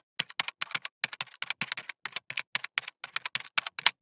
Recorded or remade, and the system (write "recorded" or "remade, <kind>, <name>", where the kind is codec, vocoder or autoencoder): recorded